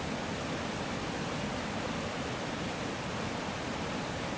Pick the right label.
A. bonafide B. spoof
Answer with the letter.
A